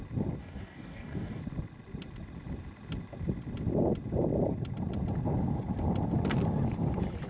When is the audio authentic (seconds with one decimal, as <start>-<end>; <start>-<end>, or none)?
0.0-0.4; 1.4-7.3